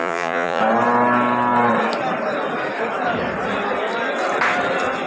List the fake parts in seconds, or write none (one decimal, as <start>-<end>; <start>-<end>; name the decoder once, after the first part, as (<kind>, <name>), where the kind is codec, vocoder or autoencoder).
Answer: 0.0-0.6 (vocoder, Vocos)